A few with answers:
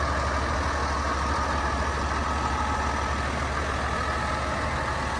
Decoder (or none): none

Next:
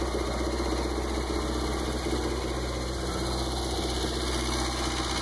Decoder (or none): none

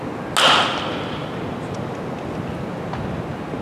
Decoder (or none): none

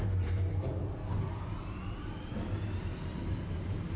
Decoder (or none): none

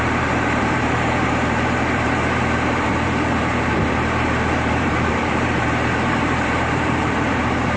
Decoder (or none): vocoder, BigVGAN v2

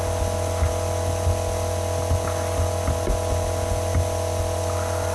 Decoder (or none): none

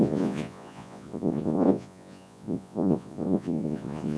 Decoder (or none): vocoder, Vocos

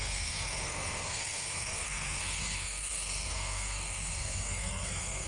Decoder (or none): codec, SNAC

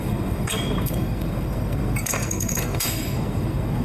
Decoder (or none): codec, SNAC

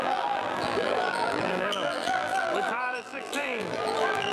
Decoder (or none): vocoder, BigVGAN v2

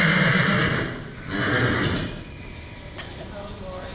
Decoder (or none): none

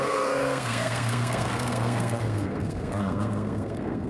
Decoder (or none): codec, SNAC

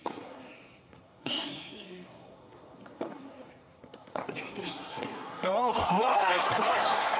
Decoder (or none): codec, SNAC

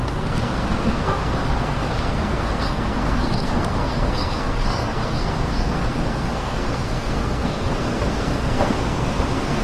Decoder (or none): codec, SNAC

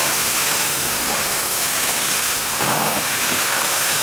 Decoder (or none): autoencoder, DAC-VAE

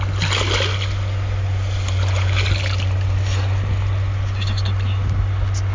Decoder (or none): none